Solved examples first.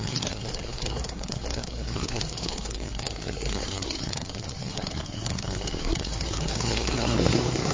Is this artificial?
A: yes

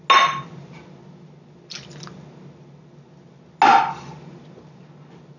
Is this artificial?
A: no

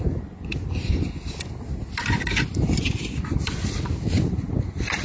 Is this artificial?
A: no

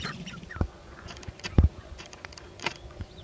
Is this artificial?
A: yes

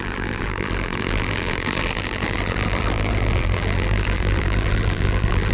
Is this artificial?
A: yes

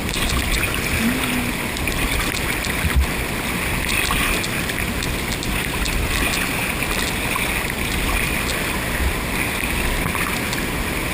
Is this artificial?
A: no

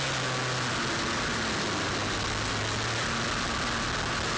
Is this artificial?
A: no